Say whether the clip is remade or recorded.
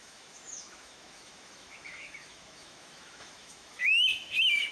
remade